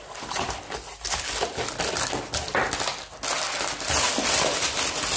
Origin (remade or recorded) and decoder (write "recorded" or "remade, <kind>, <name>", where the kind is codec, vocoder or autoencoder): recorded